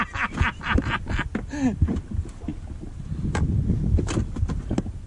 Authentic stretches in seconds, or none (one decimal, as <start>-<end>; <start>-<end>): 0.0-5.1